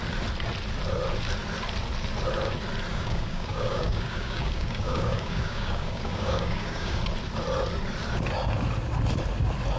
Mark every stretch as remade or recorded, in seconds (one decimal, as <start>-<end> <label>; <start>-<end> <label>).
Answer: 0.0-2.9 recorded; 2.9-7.0 remade; 7.0-9.8 recorded